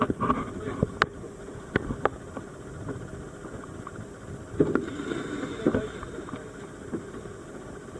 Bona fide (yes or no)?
yes